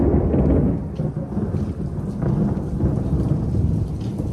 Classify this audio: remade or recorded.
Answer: recorded